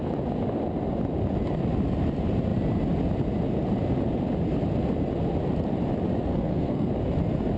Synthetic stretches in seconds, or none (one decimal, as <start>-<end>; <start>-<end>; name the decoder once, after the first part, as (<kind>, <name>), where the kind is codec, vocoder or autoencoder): 6.3-6.9 (codec, SNAC)